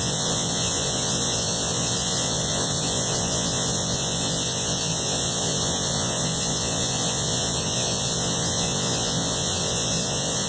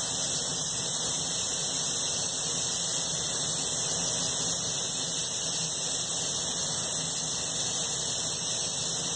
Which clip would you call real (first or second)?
second